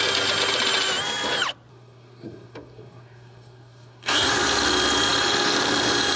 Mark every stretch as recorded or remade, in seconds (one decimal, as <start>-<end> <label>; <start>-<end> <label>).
0.0-1.7 recorded; 1.7-4.3 remade; 4.3-6.2 recorded